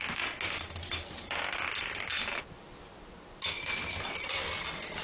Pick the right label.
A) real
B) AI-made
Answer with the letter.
A